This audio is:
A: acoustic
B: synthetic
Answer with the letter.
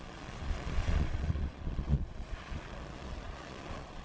B